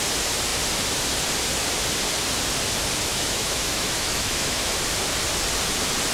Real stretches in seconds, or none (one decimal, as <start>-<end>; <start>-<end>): 0.0-3.1; 4.7-6.1